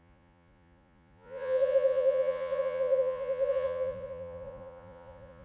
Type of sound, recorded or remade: remade